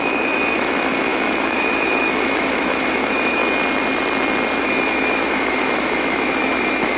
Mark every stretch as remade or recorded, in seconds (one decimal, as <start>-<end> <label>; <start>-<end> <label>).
0.0-3.4 remade; 3.4-4.6 recorded; 4.6-7.0 remade